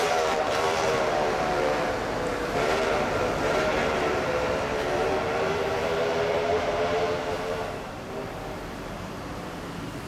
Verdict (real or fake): fake